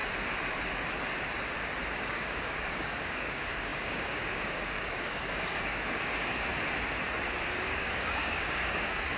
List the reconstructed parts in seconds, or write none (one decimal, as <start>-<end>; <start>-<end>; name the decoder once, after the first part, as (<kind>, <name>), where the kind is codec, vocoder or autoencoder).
2.0-6.5 (codec, DAC); 7.4-9.2